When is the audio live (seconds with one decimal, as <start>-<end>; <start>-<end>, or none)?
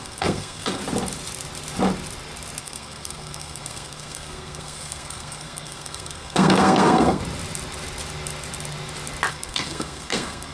0.8-2.6; 7.2-9.3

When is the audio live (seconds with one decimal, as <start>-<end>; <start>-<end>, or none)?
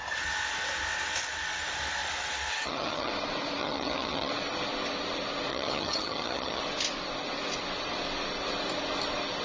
0.0-2.5; 3.1-3.6; 4.3-5.5; 6.6-9.4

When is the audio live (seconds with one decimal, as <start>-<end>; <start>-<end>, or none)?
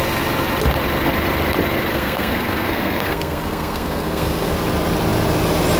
0.0-1.9; 4.5-5.8